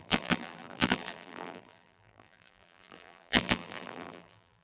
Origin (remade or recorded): remade